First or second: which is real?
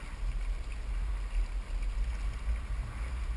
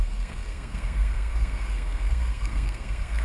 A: first